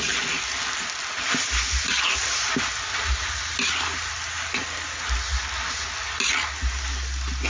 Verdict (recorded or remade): recorded